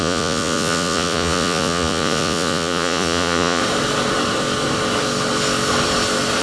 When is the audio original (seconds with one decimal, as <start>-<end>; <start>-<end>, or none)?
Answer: 3.6-6.4